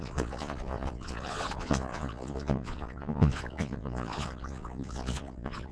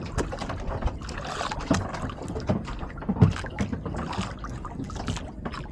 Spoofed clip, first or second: first